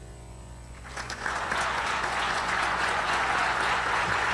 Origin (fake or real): fake